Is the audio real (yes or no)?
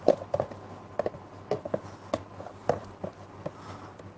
yes